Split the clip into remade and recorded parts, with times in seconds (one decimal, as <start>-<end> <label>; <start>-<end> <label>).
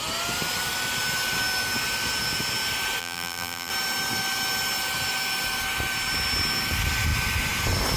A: 0.0-3.0 recorded; 3.0-3.7 remade; 3.7-8.0 recorded